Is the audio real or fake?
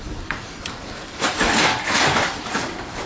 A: fake